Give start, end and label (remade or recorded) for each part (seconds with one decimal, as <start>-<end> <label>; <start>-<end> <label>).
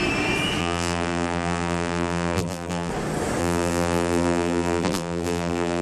0.0-0.6 recorded; 0.6-2.9 remade; 2.9-3.4 recorded; 3.4-5.8 remade